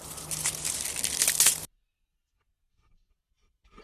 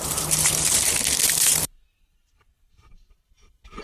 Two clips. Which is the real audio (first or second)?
first